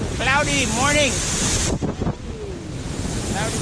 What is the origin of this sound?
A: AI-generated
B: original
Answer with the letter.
B